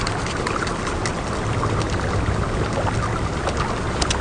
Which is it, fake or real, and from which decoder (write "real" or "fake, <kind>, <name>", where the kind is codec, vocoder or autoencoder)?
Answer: real